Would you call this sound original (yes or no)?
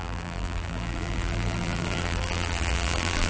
no